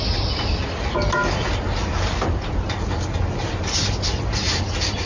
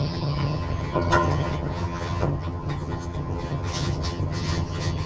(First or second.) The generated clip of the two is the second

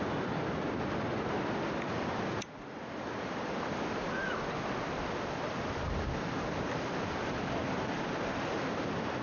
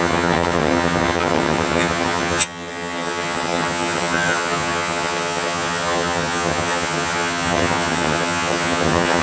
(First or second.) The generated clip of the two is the second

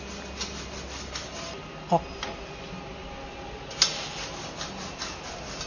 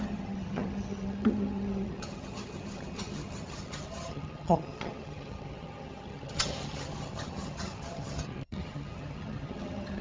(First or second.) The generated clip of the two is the second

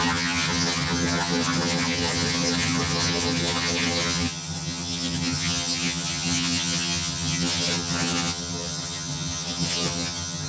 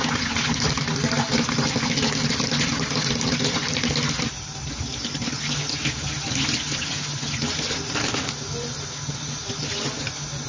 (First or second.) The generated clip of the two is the first